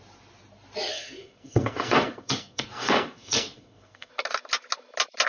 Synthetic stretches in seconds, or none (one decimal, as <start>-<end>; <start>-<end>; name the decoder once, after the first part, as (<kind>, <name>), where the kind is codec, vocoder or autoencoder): 0.9-4.1 (codec, SNAC)